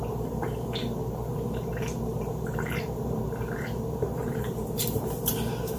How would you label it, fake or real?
fake